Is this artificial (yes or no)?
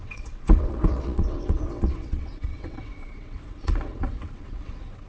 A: yes